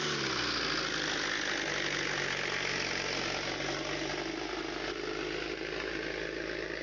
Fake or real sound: real